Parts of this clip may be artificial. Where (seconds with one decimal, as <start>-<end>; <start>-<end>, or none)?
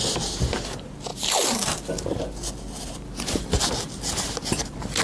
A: 1.1-4.1